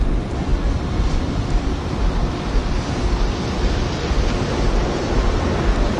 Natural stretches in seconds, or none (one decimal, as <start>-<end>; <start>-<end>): 0.0-6.0